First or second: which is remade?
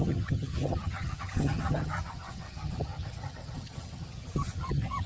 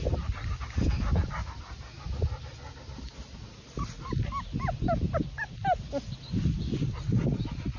first